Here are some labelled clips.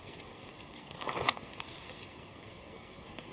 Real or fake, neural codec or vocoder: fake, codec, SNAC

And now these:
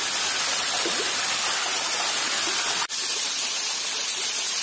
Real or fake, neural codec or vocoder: real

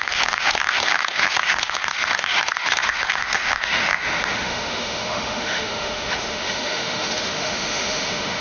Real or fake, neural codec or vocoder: fake, autoencoder, DAC-VAE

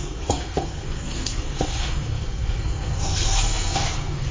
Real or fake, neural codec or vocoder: fake, codec, SNAC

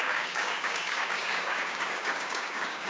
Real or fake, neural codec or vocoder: fake, codec, DAC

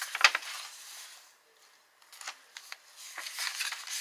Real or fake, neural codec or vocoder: real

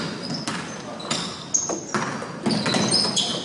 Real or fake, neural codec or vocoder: real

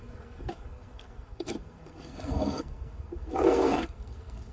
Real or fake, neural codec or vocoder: fake, codec, SNAC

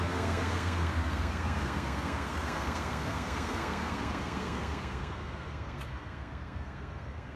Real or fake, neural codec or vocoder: fake, codec, SNAC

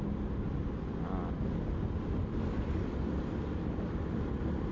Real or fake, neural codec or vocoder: real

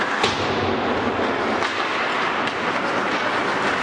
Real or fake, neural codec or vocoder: real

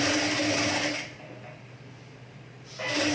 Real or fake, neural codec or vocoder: real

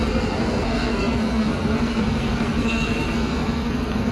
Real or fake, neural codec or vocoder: fake, codec, SNAC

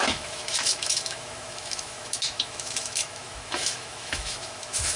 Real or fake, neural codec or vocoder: fake, autoencoder, DAC-VAE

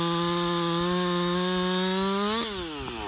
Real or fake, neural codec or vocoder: real